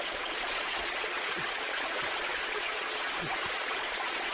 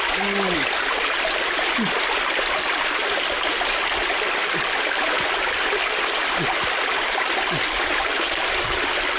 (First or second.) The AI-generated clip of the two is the first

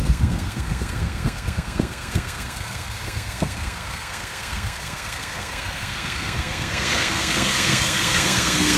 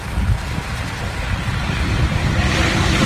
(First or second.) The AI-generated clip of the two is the first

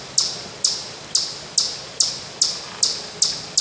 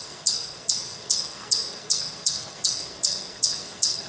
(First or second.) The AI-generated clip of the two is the second